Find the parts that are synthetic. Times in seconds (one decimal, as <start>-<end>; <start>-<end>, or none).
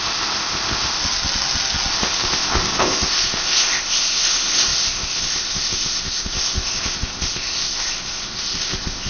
0.0-1.0; 1.9-9.1